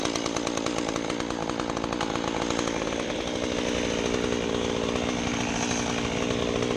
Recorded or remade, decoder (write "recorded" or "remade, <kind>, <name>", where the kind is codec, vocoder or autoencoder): recorded